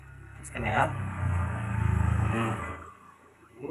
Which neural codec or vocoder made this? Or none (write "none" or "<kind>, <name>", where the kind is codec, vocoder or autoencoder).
codec, SNAC